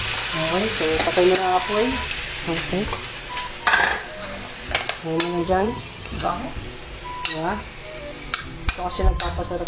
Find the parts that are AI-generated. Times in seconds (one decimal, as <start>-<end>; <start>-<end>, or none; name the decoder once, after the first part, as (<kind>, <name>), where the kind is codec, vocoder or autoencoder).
5.4-6.3 (vocoder, HiFi-GAN)